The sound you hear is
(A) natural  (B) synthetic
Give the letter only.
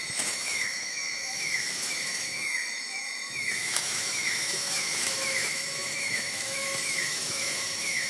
B